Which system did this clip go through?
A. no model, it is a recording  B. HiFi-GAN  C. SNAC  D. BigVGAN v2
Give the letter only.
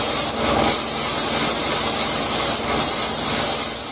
A